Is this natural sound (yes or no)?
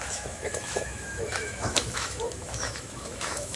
no